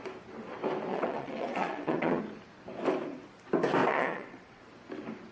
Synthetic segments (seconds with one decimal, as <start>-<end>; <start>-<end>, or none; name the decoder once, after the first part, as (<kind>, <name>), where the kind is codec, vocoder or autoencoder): 0.9-2.2 (vocoder, WaveNeXt); 3.9-4.6